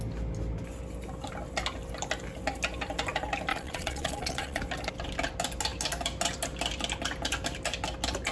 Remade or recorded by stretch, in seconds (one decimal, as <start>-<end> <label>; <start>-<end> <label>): 0.0-3.5 recorded; 3.5-4.6 remade; 4.6-8.3 recorded